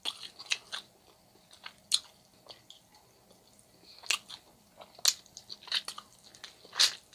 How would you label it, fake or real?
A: real